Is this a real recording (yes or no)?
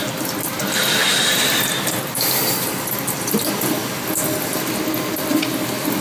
yes